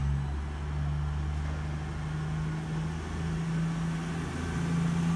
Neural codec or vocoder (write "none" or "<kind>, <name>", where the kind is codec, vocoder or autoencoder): none